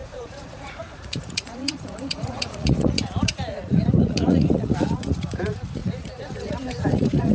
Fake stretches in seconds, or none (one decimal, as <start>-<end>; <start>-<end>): 0.0-7.3